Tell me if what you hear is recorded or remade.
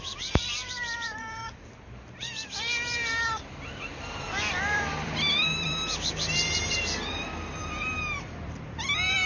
remade